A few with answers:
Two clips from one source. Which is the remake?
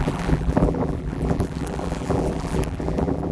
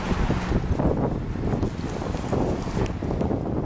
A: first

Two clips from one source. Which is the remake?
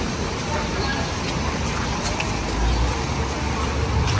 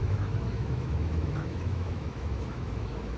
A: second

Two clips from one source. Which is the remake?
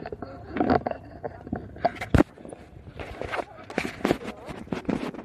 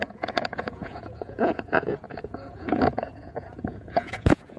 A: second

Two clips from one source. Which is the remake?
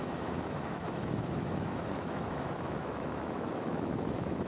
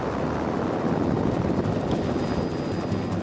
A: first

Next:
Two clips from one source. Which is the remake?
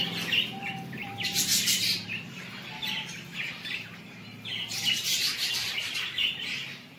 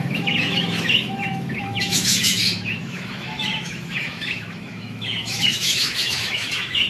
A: second